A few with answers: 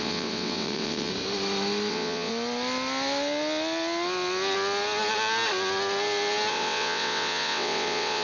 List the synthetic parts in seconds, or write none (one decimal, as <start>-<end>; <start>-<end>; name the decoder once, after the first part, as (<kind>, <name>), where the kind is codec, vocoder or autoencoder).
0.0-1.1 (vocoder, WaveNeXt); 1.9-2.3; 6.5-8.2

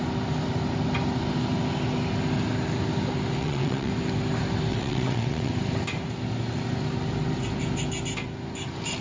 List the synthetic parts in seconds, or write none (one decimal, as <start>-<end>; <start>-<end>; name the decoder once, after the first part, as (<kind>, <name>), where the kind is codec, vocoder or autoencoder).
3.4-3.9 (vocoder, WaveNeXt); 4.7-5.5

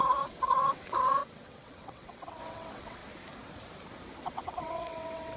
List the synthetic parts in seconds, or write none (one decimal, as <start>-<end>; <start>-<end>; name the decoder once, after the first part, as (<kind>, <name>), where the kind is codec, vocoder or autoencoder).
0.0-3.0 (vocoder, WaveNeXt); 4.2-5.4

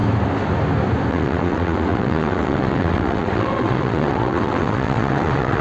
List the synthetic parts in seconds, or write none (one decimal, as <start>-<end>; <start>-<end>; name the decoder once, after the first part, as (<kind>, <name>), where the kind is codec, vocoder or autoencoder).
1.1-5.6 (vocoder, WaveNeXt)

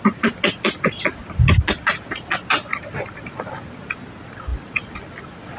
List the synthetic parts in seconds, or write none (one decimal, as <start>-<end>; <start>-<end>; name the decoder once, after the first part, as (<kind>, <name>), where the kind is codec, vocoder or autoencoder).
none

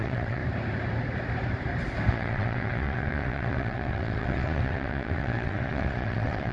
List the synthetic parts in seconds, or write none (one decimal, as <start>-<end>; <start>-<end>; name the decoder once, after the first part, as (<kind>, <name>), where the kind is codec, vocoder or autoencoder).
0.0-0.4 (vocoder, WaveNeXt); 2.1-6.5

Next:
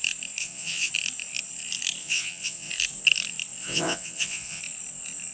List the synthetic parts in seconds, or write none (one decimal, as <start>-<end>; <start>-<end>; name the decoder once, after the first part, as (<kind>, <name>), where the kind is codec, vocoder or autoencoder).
0.4-0.9 (vocoder, WaveNeXt); 2.0-2.7; 3.6-4.6

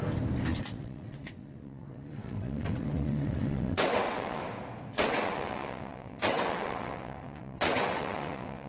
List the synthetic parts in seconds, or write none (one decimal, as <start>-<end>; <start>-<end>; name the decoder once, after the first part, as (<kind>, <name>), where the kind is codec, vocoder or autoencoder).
0.5-4.4 (vocoder, WaveNeXt); 4.9-8.7